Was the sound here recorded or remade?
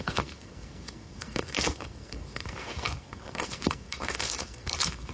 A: remade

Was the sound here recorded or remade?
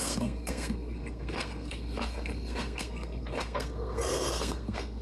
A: remade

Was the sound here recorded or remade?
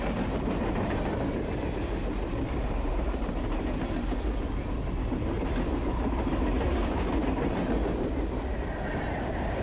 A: recorded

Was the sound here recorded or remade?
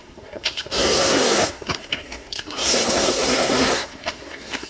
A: remade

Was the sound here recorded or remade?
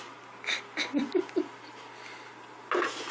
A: recorded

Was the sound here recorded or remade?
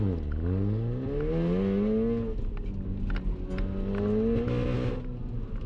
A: recorded